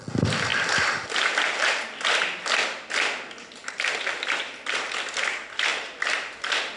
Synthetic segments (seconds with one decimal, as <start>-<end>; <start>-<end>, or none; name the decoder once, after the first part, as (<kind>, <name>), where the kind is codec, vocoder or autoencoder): 0.5-1.1 (vocoder, BigVGAN v2); 5.7-6.8